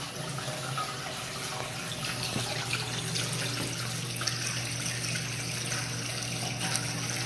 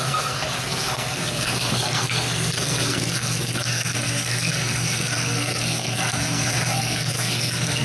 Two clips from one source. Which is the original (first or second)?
first